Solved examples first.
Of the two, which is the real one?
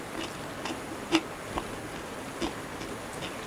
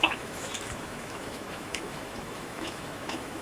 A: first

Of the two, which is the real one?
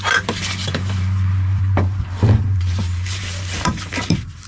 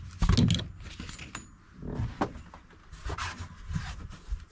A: second